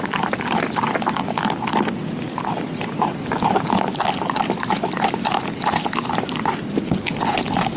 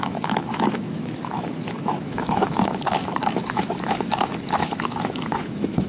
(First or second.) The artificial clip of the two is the second